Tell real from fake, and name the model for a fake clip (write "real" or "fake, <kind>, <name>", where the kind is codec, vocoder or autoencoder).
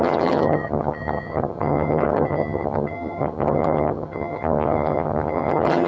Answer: fake, vocoder, HiFi-GAN